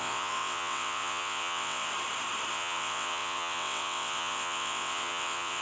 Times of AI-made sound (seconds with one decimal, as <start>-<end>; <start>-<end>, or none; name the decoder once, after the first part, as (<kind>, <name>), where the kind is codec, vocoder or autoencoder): 0.0-1.9 (vocoder, WaveNeXt); 2.5-5.6